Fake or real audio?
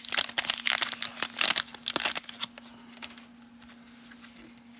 real